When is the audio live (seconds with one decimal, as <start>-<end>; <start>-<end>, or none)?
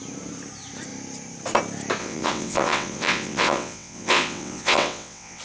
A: 0.0-2.0